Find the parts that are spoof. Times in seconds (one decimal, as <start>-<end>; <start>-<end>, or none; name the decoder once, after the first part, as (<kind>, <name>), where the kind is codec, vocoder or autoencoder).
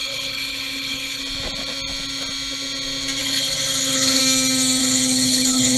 0.0-1.2 (codec, HILCodec); 3.2-4.2; 4.8-5.8